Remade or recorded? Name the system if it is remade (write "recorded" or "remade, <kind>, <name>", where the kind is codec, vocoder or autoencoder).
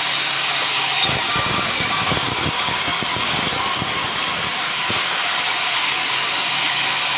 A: remade, codec, DAC